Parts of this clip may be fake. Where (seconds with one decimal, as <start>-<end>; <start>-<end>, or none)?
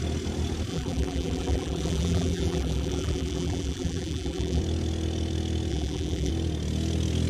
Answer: 0.7-4.6; 5.7-6.3